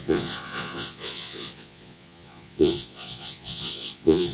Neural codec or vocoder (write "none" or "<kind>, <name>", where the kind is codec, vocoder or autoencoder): vocoder, Vocos